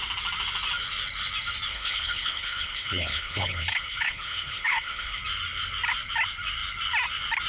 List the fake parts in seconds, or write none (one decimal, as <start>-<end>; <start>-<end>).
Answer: 1.7-5.2